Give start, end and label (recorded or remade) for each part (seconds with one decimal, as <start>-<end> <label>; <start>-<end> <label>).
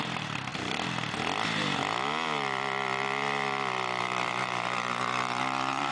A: 0.0-0.5 remade; 0.5-4.0 recorded; 4.0-5.9 remade